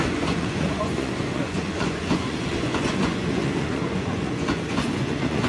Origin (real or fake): fake